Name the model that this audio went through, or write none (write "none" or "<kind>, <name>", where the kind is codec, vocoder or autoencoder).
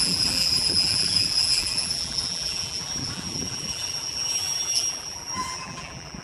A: vocoder, BigVGAN v2